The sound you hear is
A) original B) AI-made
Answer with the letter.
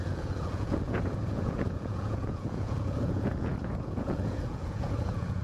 B